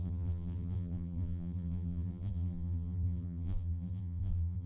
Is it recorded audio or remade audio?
remade